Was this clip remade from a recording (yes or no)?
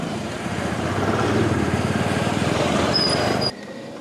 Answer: yes